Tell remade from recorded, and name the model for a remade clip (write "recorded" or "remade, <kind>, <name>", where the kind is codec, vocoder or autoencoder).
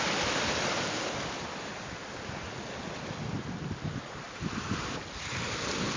recorded